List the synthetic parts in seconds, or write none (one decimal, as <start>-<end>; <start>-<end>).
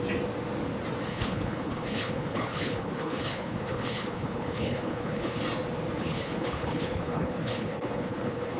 1.1-5.4; 6.0-8.6